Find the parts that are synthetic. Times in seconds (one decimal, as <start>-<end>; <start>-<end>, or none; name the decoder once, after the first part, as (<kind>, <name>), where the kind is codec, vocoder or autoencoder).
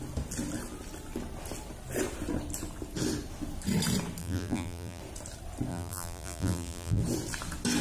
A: 4.2-5.0 (vocoder, BigVGAN v2); 5.7-7.0